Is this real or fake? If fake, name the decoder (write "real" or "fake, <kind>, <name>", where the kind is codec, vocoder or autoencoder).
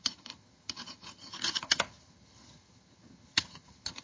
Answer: fake, vocoder, HiFi-GAN